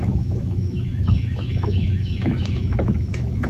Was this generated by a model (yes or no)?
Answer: yes